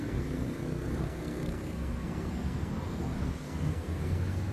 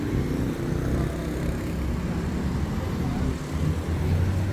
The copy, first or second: first